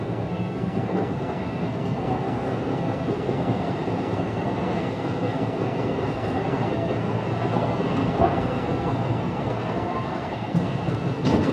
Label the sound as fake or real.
fake